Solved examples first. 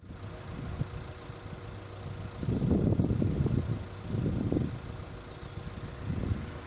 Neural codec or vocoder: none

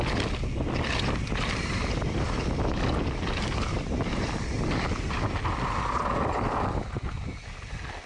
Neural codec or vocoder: none